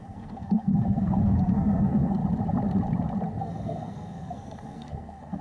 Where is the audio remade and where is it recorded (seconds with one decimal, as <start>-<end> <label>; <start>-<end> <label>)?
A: 0.0-2.2 remade; 2.2-3.4 recorded; 3.4-5.4 remade